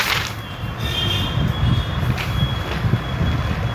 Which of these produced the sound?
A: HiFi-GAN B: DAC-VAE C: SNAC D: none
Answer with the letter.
D